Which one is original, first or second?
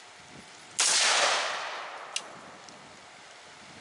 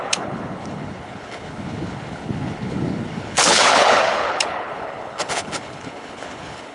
first